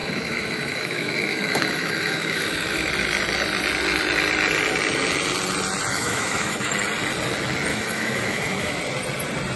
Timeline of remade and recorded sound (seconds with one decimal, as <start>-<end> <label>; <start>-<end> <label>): 0.0-2.9 remade; 2.9-5.9 recorded; 5.9-6.7 remade; 6.7-7.7 recorded; 7.7-8.8 remade; 8.8-9.6 recorded